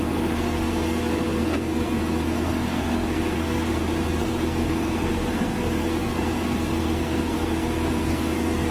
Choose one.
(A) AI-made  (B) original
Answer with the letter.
A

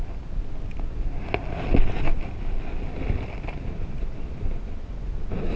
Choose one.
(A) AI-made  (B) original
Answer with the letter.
B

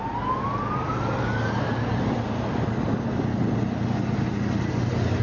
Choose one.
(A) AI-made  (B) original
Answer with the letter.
B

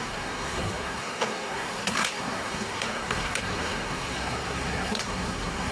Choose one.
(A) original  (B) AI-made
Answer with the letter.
B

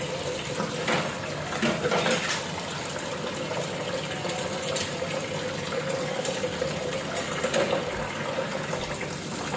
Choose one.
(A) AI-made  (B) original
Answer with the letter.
B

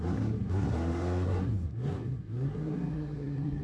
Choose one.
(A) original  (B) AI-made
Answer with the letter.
B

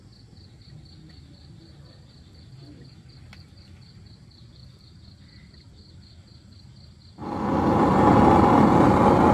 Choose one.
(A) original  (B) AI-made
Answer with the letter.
A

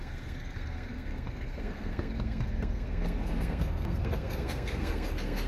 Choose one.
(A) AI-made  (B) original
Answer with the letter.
A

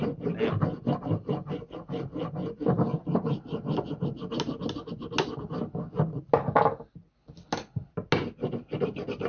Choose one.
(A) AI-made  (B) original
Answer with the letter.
B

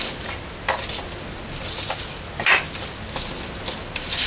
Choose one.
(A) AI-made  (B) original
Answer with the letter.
B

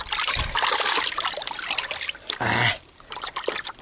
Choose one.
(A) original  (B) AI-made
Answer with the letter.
A